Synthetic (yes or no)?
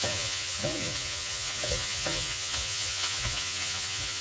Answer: yes